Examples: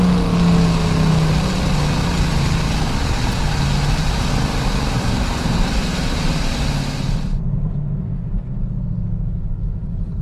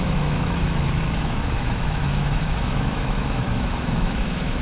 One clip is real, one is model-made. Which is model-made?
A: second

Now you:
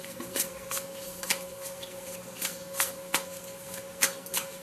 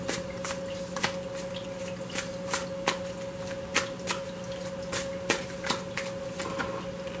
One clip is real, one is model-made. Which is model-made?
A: first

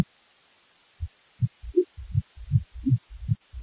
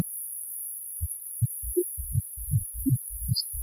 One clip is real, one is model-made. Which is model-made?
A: second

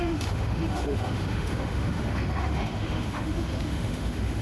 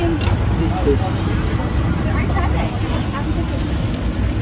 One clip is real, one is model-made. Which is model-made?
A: first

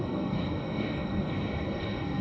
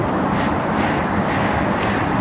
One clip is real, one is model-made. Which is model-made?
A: first